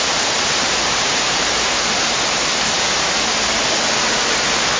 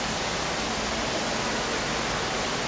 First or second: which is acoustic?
second